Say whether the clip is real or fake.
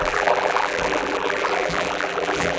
fake